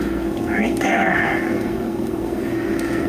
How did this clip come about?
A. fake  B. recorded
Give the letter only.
A